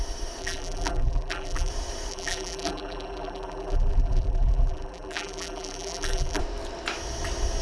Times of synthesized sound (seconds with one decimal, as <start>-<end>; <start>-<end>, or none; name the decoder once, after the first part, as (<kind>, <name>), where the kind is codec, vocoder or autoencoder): 0.4-1.7 (vocoder, BigVGAN v2); 2.1-6.4